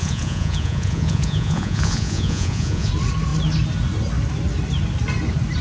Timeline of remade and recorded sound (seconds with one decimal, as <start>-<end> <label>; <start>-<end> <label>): 0.0-2.9 remade; 2.9-5.6 recorded